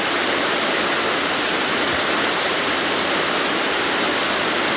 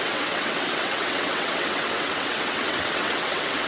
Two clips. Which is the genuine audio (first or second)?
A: first